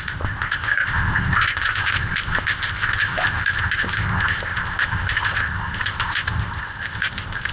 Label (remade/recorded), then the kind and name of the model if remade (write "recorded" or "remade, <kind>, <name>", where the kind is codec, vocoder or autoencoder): remade, codec, ZipCodec